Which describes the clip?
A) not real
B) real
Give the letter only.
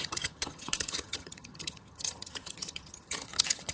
A